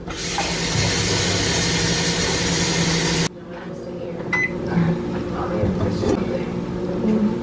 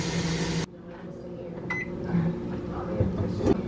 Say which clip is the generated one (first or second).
second